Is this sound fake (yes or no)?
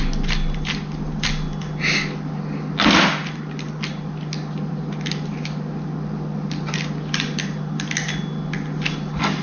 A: no